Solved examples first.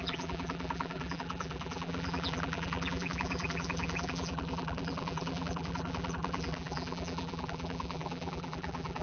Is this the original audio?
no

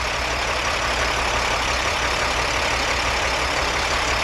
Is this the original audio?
no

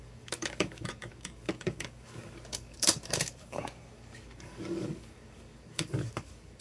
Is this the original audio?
no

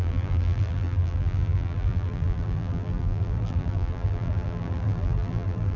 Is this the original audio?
no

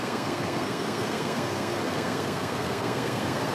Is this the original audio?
no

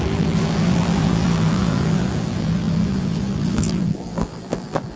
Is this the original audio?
no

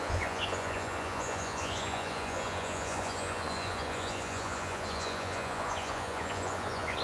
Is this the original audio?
no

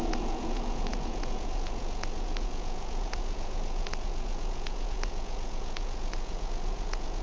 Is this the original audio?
no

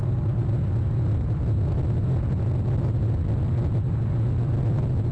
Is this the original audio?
yes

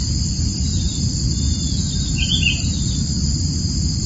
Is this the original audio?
yes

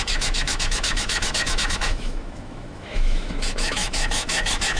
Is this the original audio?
no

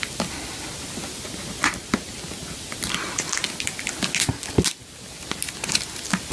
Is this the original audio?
yes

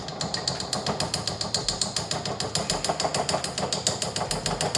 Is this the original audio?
yes